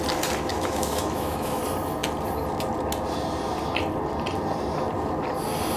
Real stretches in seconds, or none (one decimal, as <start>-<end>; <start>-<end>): 0.0-0.5; 1.6-5.8